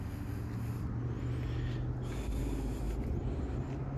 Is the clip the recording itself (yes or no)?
yes